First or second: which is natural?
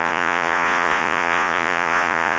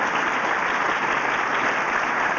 second